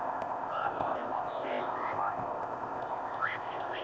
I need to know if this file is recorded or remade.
remade